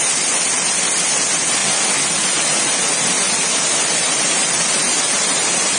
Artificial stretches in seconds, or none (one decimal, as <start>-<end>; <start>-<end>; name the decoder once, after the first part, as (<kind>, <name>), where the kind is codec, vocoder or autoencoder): none